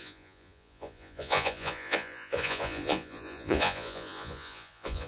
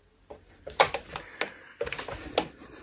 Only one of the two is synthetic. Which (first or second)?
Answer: first